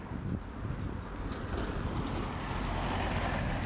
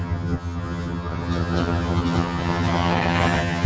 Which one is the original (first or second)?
first